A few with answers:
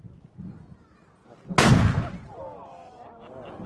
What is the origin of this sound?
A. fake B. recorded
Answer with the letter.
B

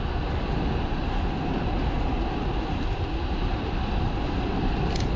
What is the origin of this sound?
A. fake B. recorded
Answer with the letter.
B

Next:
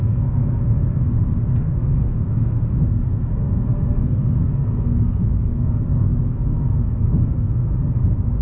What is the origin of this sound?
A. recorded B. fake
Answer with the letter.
B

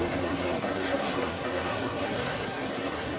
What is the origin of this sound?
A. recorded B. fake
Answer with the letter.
B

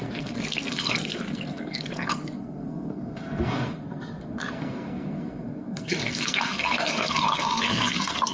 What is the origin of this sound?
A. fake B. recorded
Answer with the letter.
A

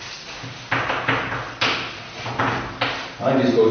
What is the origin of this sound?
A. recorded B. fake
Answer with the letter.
A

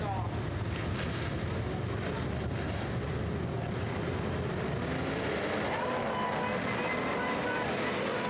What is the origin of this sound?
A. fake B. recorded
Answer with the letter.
B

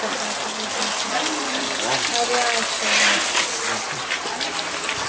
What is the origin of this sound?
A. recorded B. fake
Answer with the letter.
A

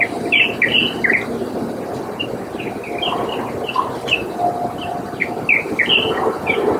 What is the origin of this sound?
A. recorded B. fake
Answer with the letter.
A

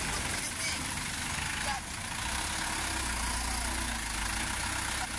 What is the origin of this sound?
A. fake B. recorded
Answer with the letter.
B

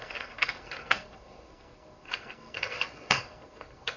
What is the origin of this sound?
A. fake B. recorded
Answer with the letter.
A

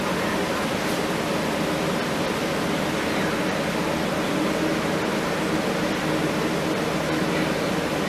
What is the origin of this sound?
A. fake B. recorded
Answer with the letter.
B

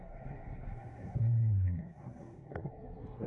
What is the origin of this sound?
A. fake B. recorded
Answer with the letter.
A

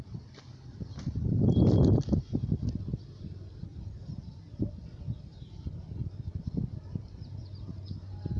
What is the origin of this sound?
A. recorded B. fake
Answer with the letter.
A